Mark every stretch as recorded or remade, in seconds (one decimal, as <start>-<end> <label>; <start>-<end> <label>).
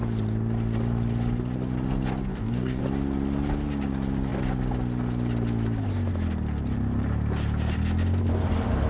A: 0.0-2.3 recorded; 2.3-2.8 remade; 2.8-8.9 recorded